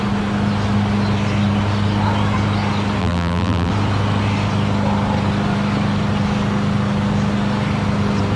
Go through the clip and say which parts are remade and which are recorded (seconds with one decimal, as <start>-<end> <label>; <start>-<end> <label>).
0.0-3.0 recorded; 3.0-3.7 remade; 3.7-8.4 recorded